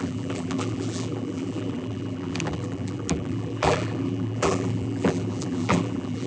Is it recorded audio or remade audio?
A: remade